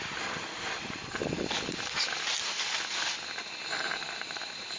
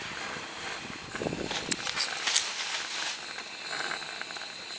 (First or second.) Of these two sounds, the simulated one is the first